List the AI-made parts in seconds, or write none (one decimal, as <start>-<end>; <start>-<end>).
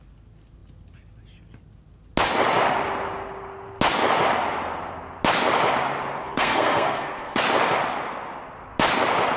6.2-7.4